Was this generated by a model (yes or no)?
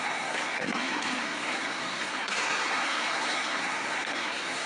yes